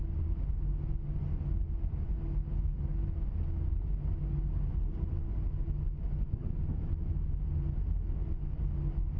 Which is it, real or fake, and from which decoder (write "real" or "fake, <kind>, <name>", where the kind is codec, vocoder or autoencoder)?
real